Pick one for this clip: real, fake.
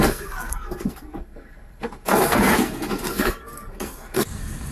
fake